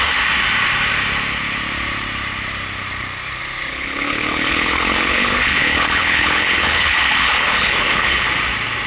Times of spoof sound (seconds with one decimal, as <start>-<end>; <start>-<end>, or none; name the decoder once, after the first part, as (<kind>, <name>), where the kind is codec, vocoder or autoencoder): 3.7-8.2 (codec, HILCodec)